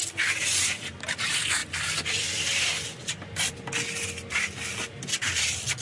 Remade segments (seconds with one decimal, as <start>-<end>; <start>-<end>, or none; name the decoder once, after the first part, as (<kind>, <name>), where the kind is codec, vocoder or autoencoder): none